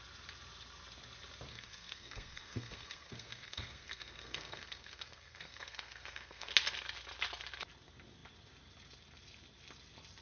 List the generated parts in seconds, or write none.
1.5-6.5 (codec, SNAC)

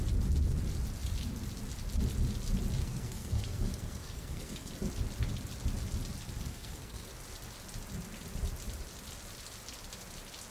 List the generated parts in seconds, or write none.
2.8-4.7 (codec, SNAC); 6.5-7.1